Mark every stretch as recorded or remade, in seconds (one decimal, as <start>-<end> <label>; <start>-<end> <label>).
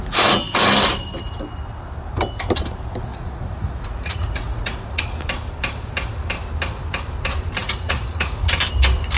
0.0-3.1 recorded; 3.1-5.0 remade; 5.0-7.6 recorded; 7.6-8.5 remade; 8.5-9.2 recorded